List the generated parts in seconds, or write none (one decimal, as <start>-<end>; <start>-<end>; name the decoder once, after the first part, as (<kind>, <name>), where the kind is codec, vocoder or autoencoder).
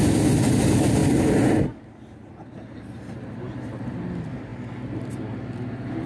none